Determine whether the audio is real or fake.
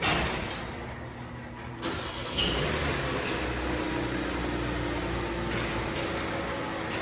real